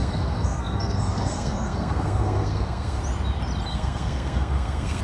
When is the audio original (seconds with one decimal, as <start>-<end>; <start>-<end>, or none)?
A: 3.0-3.7